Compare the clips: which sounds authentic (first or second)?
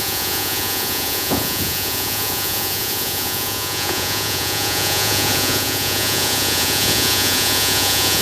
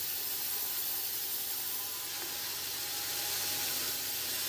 second